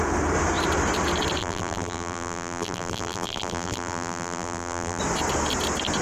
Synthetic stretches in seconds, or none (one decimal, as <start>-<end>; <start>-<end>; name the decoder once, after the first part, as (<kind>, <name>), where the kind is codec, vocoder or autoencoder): 1.4-5.0 (vocoder, BigVGAN v2)